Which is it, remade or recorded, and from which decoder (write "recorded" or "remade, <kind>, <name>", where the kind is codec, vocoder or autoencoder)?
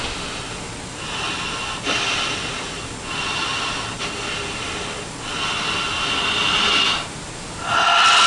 recorded